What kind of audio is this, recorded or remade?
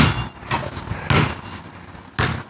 recorded